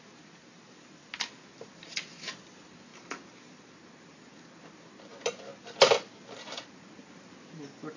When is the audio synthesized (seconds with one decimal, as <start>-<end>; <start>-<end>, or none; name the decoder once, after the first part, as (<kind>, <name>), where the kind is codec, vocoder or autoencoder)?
none

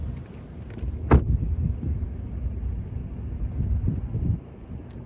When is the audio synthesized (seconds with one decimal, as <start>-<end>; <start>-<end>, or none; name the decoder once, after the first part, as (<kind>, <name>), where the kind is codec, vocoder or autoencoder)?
none

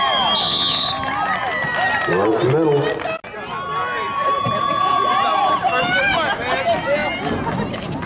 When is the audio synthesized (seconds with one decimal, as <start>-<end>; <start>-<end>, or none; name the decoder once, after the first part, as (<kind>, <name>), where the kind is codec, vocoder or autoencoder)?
0.4-0.9 (vocoder, Vocos)

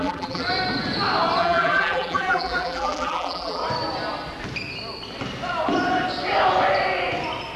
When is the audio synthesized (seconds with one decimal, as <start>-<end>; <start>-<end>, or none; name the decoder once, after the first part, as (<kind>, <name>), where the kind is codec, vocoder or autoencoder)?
0.0-0.5 (vocoder, BigVGAN v2); 1.4-3.6

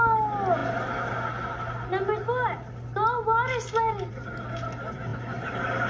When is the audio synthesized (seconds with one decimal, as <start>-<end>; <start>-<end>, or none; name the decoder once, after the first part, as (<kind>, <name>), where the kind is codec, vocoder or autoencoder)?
none

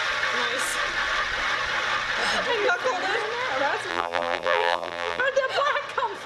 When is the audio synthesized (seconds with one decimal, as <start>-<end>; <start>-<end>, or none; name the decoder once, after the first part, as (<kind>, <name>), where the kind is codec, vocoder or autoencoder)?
3.9-5.2 (vocoder, BigVGAN v2)